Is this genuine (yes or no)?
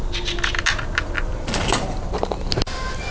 yes